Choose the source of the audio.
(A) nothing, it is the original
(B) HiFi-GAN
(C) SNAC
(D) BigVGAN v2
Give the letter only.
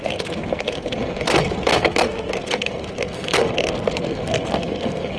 C